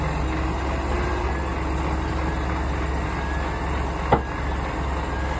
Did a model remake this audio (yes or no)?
no